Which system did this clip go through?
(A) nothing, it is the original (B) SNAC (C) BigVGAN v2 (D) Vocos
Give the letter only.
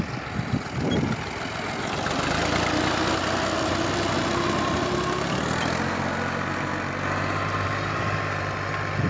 A